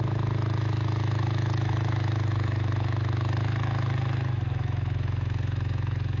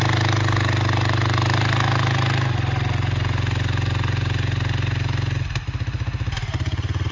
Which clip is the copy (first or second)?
first